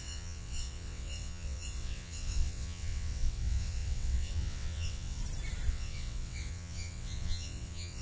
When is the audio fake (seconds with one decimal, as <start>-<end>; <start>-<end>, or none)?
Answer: 0.0-5.2; 5.7-8.0